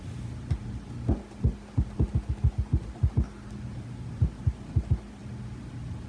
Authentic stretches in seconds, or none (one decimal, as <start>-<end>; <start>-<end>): 0.0-6.1